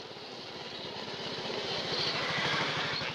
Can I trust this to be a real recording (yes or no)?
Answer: yes